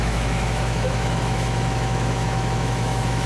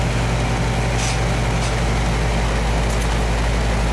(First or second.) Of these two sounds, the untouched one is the second